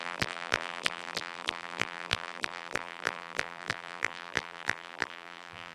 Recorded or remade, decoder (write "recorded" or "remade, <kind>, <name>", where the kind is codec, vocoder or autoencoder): remade, vocoder, BigVGAN v2